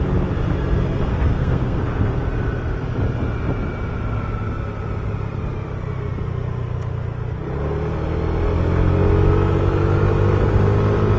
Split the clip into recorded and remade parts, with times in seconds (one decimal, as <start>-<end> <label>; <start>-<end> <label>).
0.0-1.1 recorded; 1.1-1.8 remade; 1.8-11.2 recorded